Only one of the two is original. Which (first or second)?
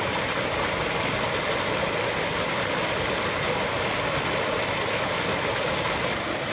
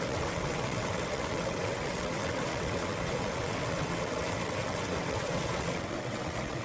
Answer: first